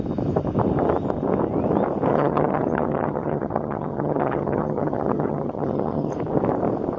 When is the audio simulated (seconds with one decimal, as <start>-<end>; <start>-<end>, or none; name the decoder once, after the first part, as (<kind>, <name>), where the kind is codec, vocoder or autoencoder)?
2.1-6.1 (vocoder, HiFi-GAN)